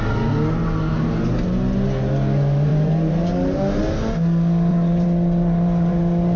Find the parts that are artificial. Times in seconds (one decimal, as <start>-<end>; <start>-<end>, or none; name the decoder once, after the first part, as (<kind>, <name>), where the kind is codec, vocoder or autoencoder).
2.7-3.8 (vocoder, BigVGAN v2); 4.7-6.4